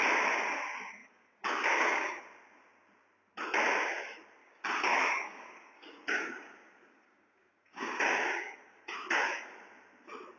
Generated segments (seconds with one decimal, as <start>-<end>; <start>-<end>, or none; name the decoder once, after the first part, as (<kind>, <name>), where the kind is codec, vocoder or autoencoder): 1.0-2.2 (codec, DAC); 4.4-9.5